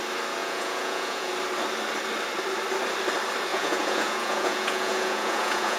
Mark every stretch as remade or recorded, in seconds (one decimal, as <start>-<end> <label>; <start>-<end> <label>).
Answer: 0.0-0.4 recorded; 0.4-1.3 remade; 1.3-3.5 recorded; 3.5-5.8 remade